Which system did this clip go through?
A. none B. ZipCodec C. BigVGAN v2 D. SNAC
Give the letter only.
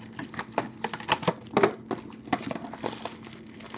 A